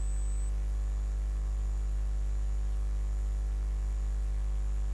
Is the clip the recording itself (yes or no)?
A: yes